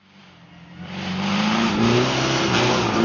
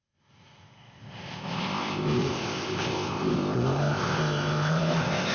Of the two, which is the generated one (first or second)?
second